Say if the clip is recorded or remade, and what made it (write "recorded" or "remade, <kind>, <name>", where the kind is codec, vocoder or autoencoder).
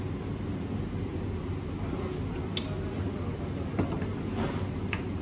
recorded